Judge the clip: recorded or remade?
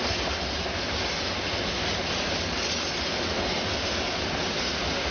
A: recorded